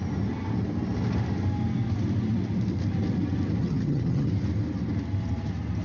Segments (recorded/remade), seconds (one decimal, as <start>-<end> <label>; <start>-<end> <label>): 0.0-3.6 recorded; 3.6-4.3 remade; 4.3-5.8 recorded